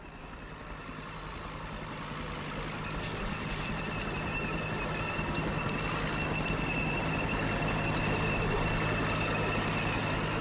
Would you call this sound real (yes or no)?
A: yes